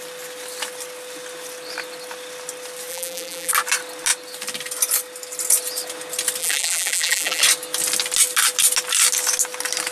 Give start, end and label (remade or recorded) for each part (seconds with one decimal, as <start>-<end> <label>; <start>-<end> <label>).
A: 0.0-2.9 recorded; 2.9-3.5 remade; 3.5-6.4 recorded; 6.4-7.4 remade; 7.4-9.9 recorded